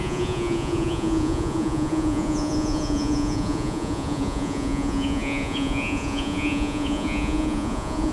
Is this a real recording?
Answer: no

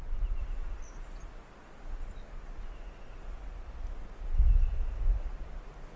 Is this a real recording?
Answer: yes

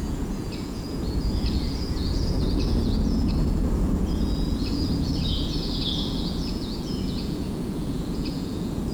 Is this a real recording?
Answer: no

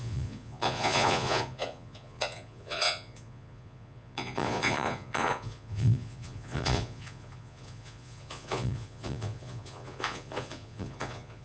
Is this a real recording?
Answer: no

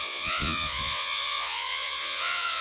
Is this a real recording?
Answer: no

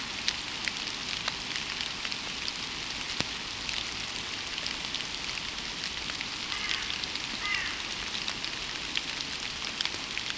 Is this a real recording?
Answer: yes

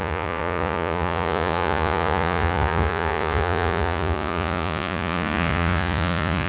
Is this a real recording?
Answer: no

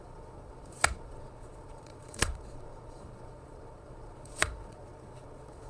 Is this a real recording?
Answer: no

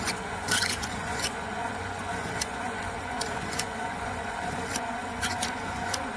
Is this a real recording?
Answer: no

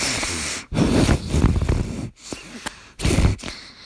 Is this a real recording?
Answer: yes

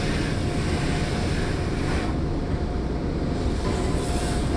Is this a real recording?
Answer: yes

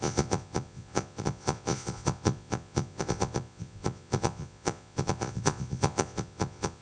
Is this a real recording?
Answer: no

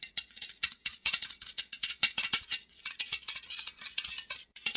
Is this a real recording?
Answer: no